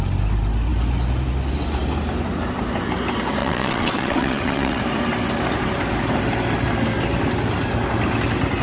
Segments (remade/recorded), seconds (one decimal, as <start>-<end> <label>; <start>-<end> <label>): 0.0-3.4 recorded; 3.4-4.8 remade; 4.8-8.6 recorded